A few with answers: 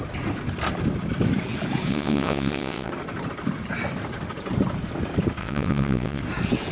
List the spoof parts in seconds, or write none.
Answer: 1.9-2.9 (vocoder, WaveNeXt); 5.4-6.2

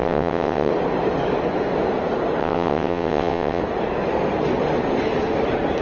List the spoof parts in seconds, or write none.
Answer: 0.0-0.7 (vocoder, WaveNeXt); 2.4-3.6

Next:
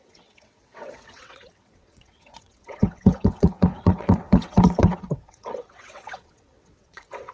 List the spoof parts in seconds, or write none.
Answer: 0.0-7.3 (vocoder, WaveNeXt)

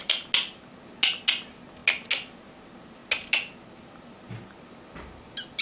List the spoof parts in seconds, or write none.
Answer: none